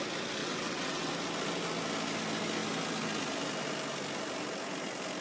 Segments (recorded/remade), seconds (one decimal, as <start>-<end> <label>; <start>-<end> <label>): 0.0-0.4 recorded; 0.4-1.1 remade; 1.1-5.2 recorded